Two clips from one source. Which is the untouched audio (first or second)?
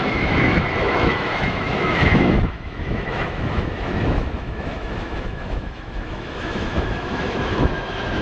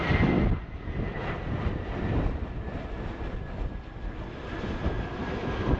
second